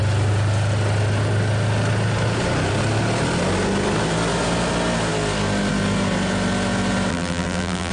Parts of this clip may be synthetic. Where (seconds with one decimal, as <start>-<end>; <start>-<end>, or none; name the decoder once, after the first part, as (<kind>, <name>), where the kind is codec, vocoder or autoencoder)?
7.1-7.9 (vocoder, BigVGAN v2)